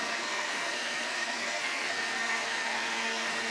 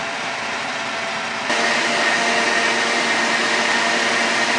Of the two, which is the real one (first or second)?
second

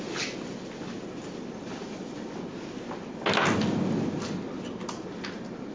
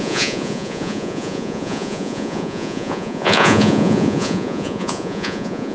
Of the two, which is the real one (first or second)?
first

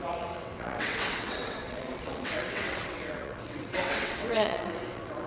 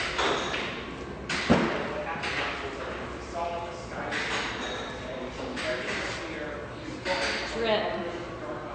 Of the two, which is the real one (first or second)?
second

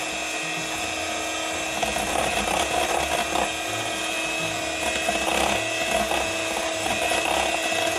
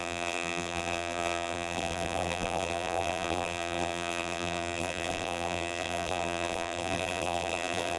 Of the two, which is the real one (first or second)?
first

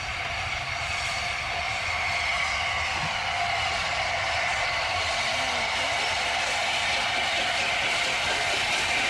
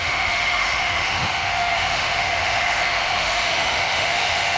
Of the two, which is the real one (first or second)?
first